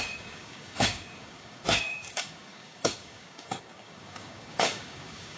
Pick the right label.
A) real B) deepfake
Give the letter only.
B